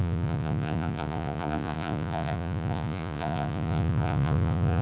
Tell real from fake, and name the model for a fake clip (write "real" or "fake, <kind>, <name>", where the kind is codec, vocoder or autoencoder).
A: fake, vocoder, Vocos